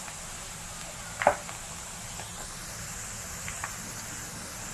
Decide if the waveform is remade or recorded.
recorded